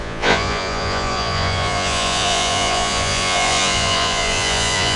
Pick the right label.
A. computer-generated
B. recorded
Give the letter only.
A